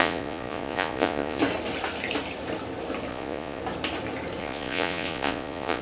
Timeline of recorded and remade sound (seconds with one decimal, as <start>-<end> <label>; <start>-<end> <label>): 0.0-1.4 remade; 1.4-3.1 recorded; 3.1-3.6 remade; 3.6-4.4 recorded; 4.4-5.8 remade